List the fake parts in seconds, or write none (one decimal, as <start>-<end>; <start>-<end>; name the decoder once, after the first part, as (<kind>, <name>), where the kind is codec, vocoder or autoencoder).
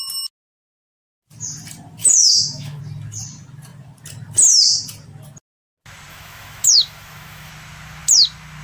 2.0-2.8 (autoencoder, DAC-VAE); 6.1-7.5